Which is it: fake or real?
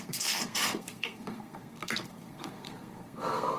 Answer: fake